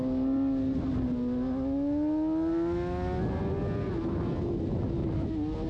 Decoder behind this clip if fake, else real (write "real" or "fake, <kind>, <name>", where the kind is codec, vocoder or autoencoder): real